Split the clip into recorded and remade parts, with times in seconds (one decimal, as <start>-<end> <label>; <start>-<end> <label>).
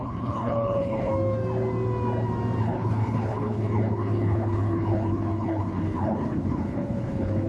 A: 0.0-1.1 remade; 1.1-2.6 recorded; 2.6-7.5 remade